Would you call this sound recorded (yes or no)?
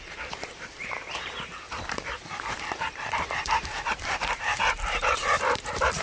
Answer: no